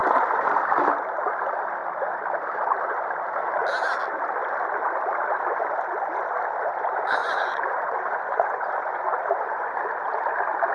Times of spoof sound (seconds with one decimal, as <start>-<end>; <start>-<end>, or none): 7.2-9.8